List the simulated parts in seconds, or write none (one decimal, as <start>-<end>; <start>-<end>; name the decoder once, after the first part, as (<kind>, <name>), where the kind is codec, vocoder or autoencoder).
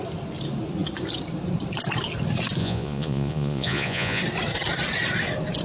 2.6-4.2 (vocoder, Vocos)